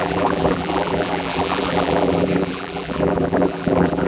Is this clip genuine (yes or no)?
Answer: no